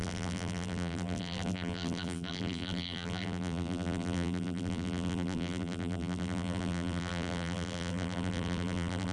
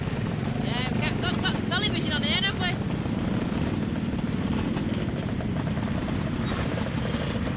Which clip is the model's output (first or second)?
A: first